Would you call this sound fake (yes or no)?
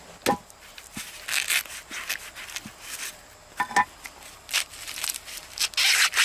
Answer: no